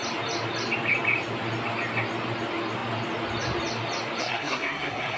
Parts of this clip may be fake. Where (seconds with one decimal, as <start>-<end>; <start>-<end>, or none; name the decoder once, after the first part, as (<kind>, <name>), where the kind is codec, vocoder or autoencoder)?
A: 4.2-5.2 (codec, SNAC)